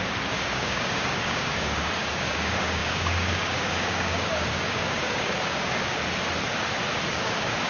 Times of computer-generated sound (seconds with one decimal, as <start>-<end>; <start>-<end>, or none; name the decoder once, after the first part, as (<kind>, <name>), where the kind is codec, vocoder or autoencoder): 0.0-6.0 (codec, DAC); 7.1-7.7